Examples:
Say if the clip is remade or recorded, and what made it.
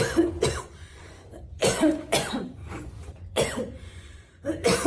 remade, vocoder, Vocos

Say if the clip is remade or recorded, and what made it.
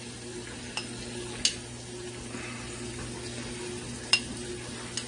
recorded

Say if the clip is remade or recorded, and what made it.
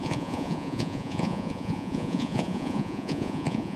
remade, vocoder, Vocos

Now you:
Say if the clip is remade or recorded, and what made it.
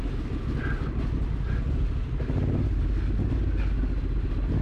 recorded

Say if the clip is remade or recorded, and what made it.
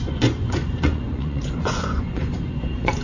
remade, vocoder, Vocos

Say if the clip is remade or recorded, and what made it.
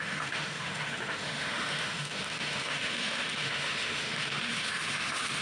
remade, autoencoder, DAC-VAE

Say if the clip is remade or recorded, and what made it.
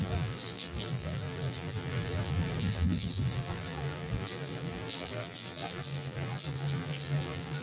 remade, vocoder, BigVGAN v2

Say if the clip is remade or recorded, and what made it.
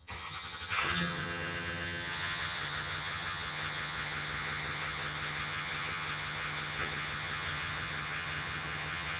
remade, vocoder, HiFi-GAN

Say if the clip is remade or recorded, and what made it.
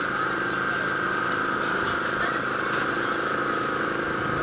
recorded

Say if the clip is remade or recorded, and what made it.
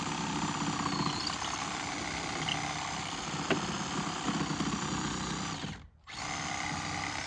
recorded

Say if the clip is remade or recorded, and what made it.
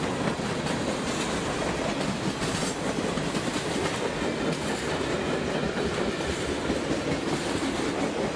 recorded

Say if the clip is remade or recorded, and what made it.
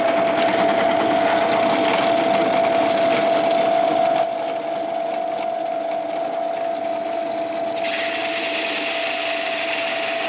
recorded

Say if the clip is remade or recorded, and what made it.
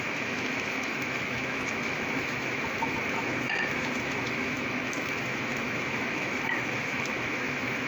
remade, autoencoder, DAC-VAE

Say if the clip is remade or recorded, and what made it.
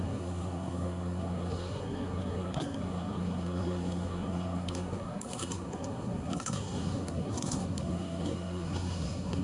remade, codec, SNAC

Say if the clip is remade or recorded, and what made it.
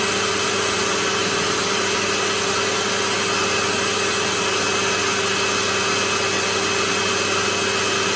recorded